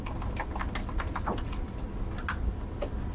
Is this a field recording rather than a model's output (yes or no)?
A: yes